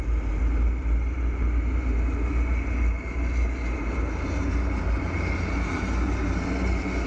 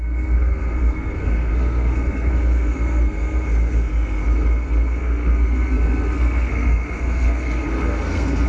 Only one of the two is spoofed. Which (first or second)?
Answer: second